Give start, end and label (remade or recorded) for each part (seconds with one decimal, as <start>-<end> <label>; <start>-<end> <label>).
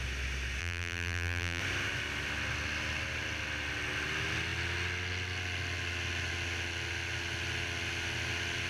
0.0-0.6 recorded; 0.6-1.6 remade; 1.6-8.7 recorded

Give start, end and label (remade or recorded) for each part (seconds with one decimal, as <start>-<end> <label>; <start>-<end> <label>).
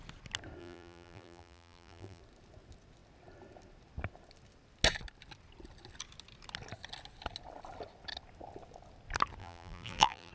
0.0-0.6 recorded; 0.6-2.2 remade; 2.2-9.4 recorded; 9.4-10.3 remade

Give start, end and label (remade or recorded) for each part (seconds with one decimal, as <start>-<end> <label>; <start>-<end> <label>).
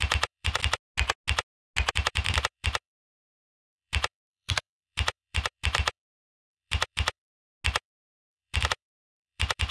0.0-0.6 remade; 0.6-1.9 recorded; 1.9-7.3 remade; 7.3-7.8 recorded; 7.8-9.7 remade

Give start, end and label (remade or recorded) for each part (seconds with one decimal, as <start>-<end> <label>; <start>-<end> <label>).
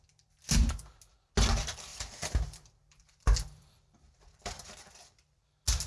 0.0-1.9 recorded; 1.9-5.4 remade; 5.4-5.9 recorded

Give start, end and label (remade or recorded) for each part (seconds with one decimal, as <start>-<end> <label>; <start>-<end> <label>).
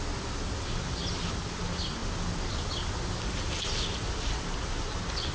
0.0-5.3 recorded